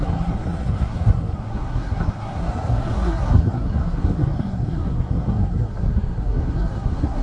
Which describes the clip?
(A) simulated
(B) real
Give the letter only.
A